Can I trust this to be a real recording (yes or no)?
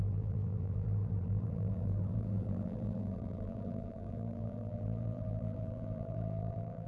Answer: no